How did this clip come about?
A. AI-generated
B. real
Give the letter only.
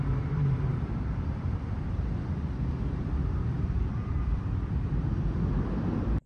A